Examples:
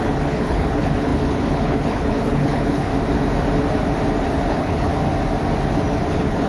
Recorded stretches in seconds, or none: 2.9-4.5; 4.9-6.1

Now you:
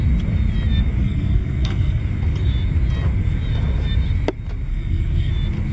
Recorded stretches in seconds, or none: 0.0-1.0; 2.0-4.7; 5.3-5.7

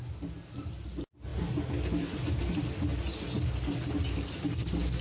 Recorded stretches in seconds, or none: 0.0-5.0

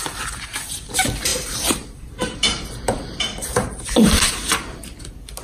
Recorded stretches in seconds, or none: 0.0-1.3; 4.3-5.4